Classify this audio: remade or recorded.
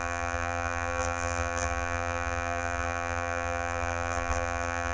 remade